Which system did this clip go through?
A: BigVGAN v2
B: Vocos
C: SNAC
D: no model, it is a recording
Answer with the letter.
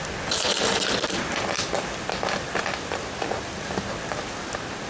D